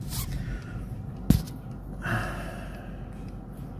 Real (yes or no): yes